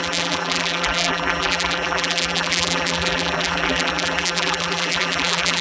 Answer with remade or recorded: remade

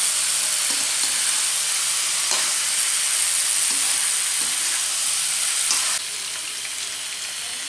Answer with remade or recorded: recorded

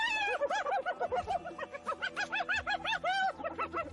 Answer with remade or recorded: recorded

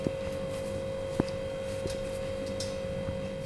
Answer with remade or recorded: recorded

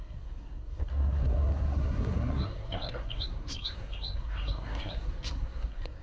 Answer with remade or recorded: remade